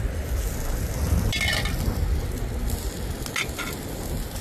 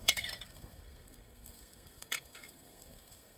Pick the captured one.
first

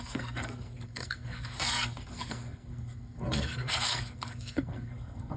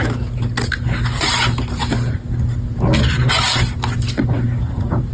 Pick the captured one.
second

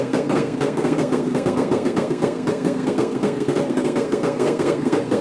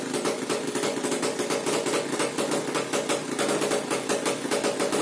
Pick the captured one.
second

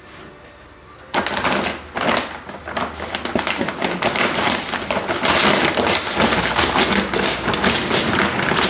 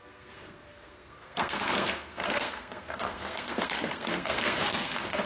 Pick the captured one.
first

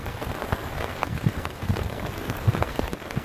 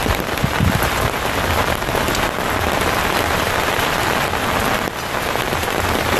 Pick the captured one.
second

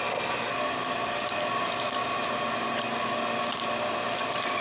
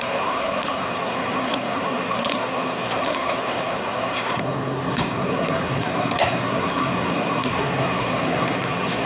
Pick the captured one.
first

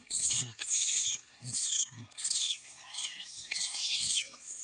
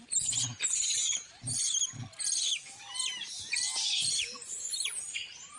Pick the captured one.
second